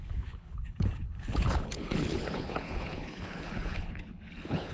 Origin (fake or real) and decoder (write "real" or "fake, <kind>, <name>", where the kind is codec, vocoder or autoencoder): fake, codec, HILCodec